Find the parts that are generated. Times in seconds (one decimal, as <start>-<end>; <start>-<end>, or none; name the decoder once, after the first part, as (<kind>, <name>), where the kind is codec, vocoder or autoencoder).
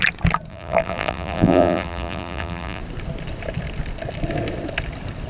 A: 0.5-2.8 (vocoder, BigVGAN v2)